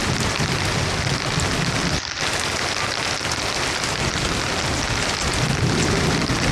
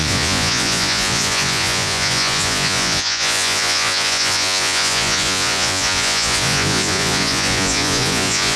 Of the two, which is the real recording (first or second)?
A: first